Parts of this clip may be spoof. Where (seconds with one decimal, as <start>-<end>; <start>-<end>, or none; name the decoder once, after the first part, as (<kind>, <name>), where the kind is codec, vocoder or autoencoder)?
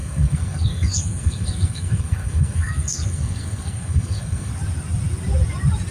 0.0-4.5 (codec, SNAC)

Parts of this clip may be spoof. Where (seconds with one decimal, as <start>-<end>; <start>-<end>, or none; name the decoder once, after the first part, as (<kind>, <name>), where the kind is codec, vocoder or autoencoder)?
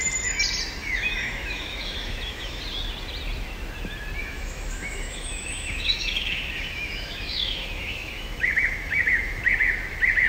0.8-2.6 (autoencoder, DAC-VAE); 4.2-9.4